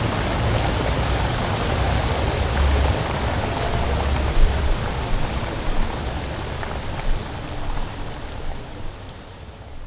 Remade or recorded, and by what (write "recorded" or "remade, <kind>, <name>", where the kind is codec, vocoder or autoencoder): recorded